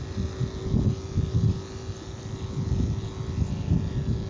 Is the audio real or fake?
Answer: real